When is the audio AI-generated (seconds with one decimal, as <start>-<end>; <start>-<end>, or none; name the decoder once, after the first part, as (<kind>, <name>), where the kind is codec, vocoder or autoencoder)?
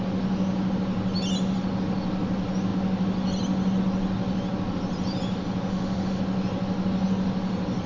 5.7-6.2 (autoencoder, DAC-VAE)